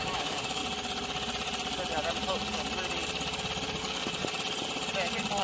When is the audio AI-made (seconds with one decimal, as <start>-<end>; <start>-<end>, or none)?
0.0-0.6; 3.8-4.2